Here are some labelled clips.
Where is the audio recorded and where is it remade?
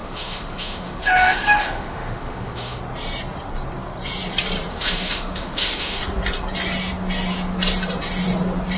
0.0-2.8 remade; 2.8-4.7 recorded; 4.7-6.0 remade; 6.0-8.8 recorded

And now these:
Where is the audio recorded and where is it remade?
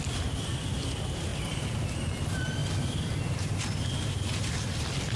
0.0-5.2 recorded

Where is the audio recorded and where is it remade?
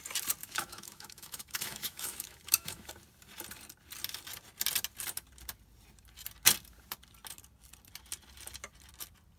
0.0-0.4 recorded; 0.4-2.9 remade; 2.9-9.4 recorded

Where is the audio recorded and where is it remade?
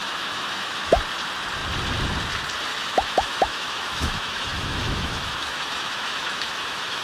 0.0-1.0 remade; 1.0-2.7 recorded; 2.7-7.0 remade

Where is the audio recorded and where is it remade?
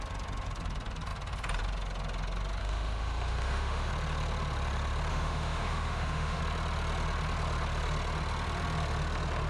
0.0-2.6 recorded; 2.6-3.9 remade; 3.9-5.1 recorded; 5.1-6.4 remade; 6.4-9.5 recorded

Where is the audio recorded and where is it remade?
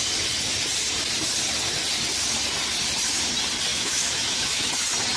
0.0-3.7 recorded; 3.7-4.7 remade; 4.7-5.2 recorded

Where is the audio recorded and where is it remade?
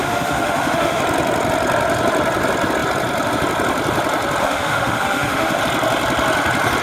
0.0-1.0 remade; 1.0-4.4 recorded; 4.4-5.6 remade; 5.6-6.8 recorded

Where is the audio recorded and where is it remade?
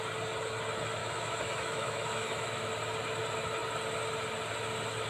0.0-1.0 recorded; 1.0-2.7 remade; 2.7-5.1 recorded